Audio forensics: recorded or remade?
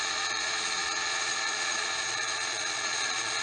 remade